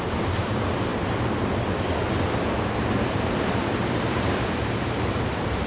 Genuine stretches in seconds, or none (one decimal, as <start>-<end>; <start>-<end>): 0.9-1.7